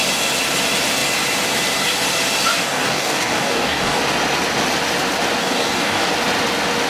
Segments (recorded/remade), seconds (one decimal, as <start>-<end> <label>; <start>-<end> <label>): 0.0-2.5 recorded; 2.5-4.0 remade; 4.0-5.4 recorded; 5.4-6.1 remade; 6.1-6.9 recorded